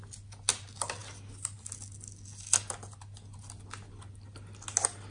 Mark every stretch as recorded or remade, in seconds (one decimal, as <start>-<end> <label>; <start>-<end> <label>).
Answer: 0.0-5.1 recorded